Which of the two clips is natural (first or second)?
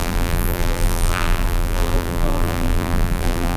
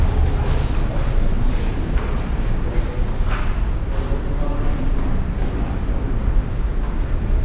second